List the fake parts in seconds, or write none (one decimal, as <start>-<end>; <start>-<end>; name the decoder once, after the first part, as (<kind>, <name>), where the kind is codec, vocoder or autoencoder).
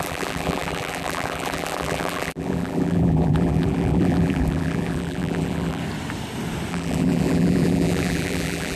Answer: 0.0-5.8 (vocoder, BigVGAN v2); 6.7-8.8